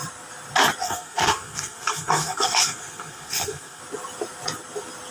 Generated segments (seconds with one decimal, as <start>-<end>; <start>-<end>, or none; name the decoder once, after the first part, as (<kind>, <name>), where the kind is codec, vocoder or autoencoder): 0.8-3.8 (codec, SNAC)